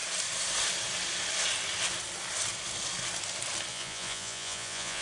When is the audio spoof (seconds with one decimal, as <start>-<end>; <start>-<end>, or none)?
3.7-5.0